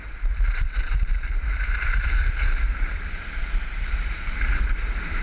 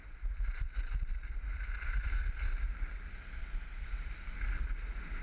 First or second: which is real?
second